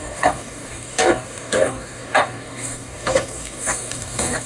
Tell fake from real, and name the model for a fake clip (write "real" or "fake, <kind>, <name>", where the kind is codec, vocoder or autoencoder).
fake, codec, DAC